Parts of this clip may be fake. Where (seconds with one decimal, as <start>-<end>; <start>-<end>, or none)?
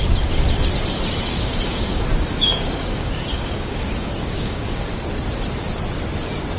1.3-2.0; 2.4-5.0